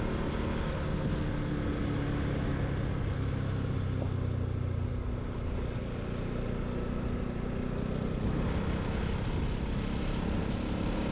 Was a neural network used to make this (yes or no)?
no